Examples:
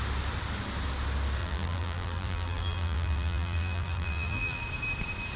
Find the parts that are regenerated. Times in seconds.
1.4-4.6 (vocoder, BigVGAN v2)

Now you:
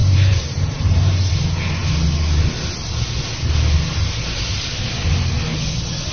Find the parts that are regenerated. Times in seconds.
0.0-1.3 (vocoder, BigVGAN v2)

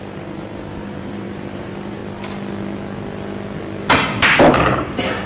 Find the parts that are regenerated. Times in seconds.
0.0-2.0 (vocoder, BigVGAN v2); 4.5-5.3

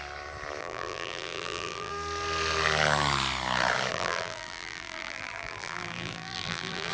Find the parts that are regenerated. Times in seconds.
0.6-1.9 (vocoder, BigVGAN v2); 3.9-6.9

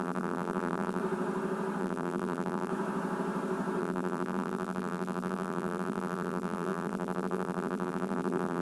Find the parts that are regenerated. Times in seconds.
0.0-1.0 (vocoder, BigVGAN v2); 1.8-2.7; 3.8-8.6

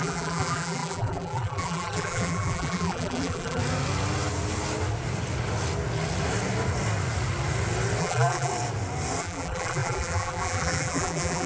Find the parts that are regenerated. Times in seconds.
0.0-3.6 (vocoder, BigVGAN v2); 8.0-8.5; 9.2-11.5